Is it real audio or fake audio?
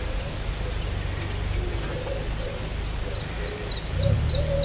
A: real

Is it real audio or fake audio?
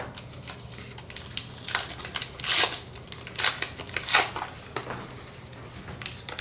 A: real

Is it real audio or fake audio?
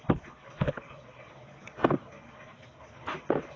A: real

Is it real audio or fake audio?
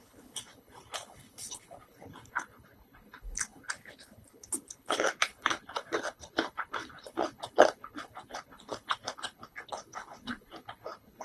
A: fake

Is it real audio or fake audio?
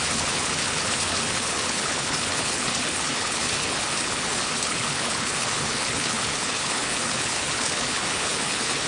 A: fake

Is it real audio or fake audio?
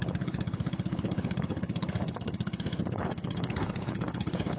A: fake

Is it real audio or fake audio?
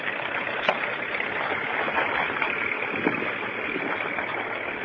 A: real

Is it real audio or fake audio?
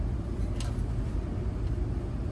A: real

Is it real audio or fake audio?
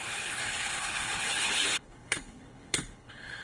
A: fake